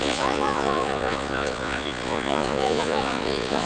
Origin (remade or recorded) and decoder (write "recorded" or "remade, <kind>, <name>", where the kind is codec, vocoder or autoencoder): remade, vocoder, Vocos